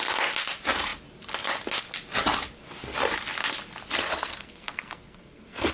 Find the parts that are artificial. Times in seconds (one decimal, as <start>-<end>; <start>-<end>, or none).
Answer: 4.2-5.7